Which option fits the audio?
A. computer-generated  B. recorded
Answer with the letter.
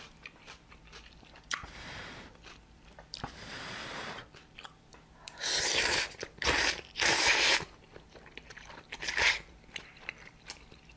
A